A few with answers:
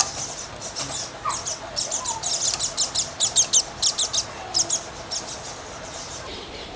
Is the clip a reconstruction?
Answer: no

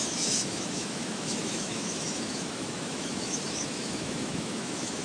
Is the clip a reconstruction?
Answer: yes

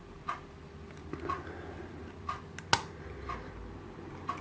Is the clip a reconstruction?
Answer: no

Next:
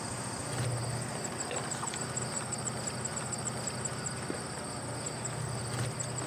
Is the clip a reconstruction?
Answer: no